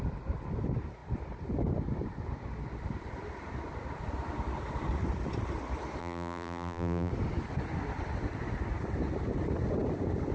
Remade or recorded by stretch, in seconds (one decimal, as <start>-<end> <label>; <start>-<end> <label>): 0.0-6.0 recorded; 6.0-7.1 remade; 7.1-10.3 recorded